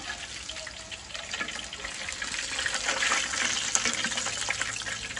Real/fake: real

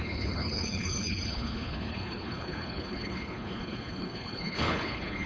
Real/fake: fake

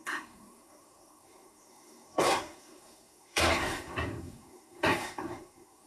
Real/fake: fake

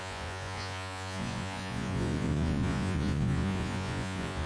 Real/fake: fake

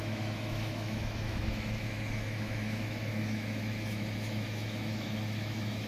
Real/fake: fake